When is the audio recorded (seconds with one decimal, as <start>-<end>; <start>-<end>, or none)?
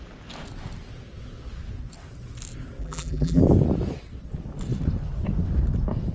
0.0-2.8; 3.4-6.1